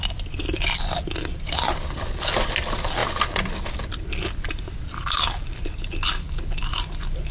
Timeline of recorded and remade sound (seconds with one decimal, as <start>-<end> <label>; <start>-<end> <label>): 0.0-7.3 recorded

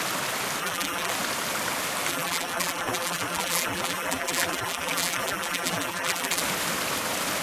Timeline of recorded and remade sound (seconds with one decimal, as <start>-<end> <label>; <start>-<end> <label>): 0.0-0.6 recorded; 0.6-1.1 remade; 1.1-2.1 recorded; 2.1-6.4 remade; 6.4-7.4 recorded

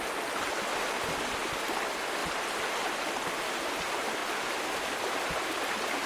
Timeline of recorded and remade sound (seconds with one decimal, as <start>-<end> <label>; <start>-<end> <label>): 0.0-6.1 recorded

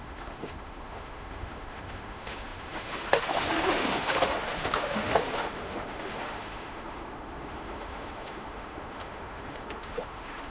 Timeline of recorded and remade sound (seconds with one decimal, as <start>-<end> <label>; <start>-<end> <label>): 0.0-10.5 remade